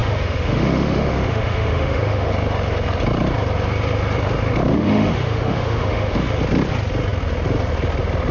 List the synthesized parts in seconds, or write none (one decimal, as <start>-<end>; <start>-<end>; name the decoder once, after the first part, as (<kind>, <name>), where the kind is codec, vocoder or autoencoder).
0.0-2.3 (autoencoder, DAC-VAE); 4.7-6.4